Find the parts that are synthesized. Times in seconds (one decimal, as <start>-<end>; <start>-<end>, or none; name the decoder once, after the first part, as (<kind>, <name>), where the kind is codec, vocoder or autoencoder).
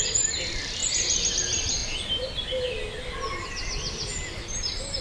0.0-0.8 (vocoder, BigVGAN v2); 1.3-1.8; 4.3-5.0